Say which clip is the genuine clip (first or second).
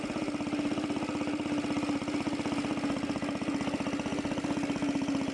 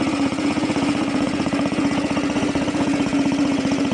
first